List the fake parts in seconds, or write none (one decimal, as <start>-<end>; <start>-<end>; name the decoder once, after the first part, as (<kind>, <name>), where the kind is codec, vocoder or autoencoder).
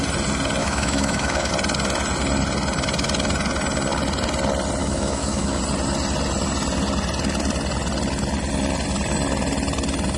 0.6-1.5 (autoencoder, DAC-VAE); 4.8-5.6